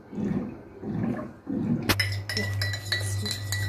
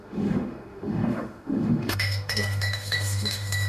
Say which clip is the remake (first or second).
second